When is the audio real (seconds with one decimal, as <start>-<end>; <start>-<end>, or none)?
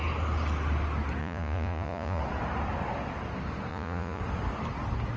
0.0-1.2; 2.2-3.7; 4.2-5.2